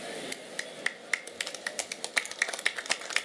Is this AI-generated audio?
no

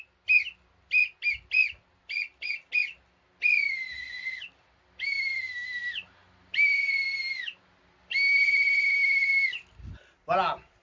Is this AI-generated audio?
no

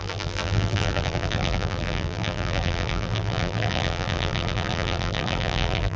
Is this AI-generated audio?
yes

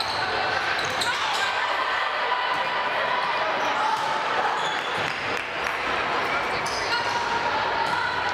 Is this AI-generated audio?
yes